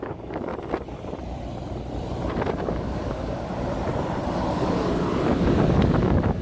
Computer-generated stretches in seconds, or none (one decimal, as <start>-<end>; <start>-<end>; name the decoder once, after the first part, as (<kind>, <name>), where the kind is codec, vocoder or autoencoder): 0.0-0.5 (codec, DAC); 2.5-3.5; 4.5-6.4